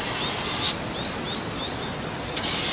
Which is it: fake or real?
real